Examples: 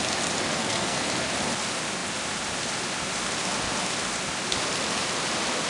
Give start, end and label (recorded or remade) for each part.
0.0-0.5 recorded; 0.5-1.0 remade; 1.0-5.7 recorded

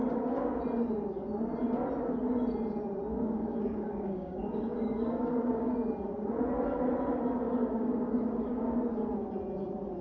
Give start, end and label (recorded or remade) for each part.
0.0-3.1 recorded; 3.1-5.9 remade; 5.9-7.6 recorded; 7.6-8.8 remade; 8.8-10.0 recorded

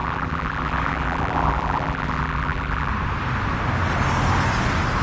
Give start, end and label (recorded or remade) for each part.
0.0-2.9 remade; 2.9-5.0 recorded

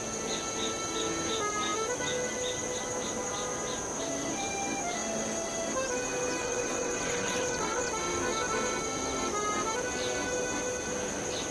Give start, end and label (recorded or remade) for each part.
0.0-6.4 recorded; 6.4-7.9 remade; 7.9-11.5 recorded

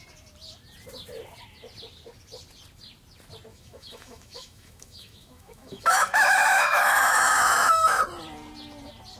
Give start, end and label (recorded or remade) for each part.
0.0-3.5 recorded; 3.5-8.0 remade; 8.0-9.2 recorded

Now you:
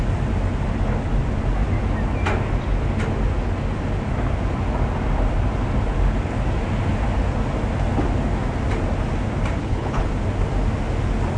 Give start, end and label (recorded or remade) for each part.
0.0-9.6 recorded; 9.6-10.1 remade; 10.1-11.4 recorded

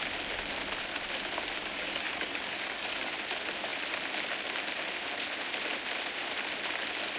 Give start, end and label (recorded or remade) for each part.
0.0-1.6 recorded; 1.6-3.1 remade; 3.1-7.2 recorded

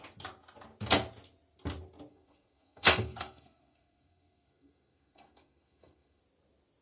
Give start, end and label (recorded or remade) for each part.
0.0-2.1 recorded; 2.1-6.2 remade; 6.2-6.8 recorded